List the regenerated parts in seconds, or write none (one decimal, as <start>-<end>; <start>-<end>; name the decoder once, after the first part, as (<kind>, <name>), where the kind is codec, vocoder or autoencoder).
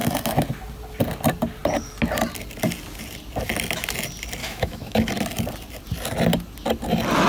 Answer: 4.4-5.1 (autoencoder, DAC-VAE)